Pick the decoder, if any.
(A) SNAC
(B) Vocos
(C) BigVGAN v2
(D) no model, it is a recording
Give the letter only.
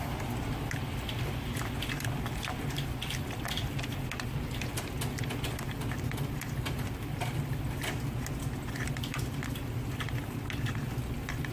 D